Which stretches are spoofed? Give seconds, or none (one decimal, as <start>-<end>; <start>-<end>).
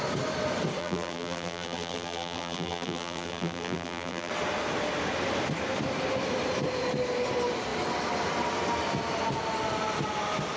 0.8-4.3